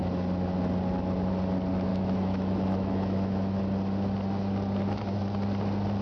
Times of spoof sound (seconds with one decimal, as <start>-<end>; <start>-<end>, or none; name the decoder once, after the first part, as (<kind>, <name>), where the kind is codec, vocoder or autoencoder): 1.9-3.6 (autoencoder, DAC-VAE)

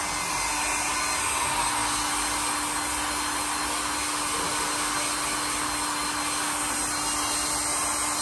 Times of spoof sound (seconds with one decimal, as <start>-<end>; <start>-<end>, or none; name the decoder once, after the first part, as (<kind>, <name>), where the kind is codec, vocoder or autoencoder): none

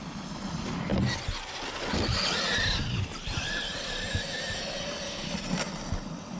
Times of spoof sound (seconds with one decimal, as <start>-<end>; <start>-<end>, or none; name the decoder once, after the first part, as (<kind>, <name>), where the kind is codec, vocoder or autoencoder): none

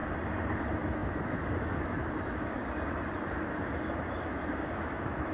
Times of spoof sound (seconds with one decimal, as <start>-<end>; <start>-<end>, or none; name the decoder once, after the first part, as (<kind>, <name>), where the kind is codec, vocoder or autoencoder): 0.6-2.6 (autoencoder, DAC-VAE); 3.2-5.3

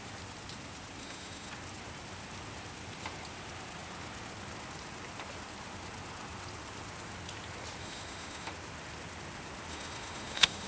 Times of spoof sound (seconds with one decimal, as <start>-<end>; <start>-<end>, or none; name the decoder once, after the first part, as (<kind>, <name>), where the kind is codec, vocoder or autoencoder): 1.0-1.5 (autoencoder, DAC-VAE); 7.8-8.5; 9.7-10.7